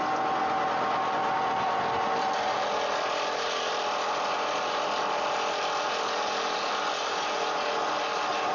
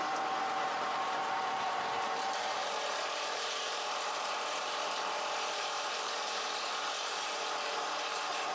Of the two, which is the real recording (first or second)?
first